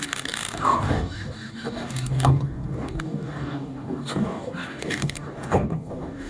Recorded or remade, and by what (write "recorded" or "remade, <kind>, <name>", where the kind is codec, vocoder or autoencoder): remade, codec, DAC